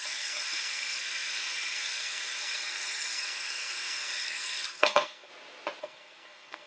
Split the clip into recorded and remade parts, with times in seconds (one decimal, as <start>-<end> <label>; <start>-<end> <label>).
0.0-5.3 remade; 5.3-5.8 recorded; 5.8-6.7 remade